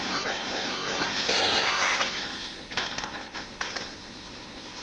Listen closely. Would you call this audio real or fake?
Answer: fake